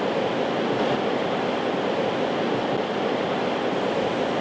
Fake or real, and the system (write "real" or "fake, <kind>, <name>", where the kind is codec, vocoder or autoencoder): real